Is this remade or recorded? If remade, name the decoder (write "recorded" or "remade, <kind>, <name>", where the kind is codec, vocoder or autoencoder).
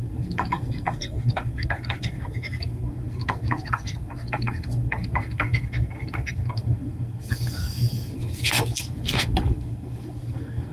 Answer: remade, codec, SNAC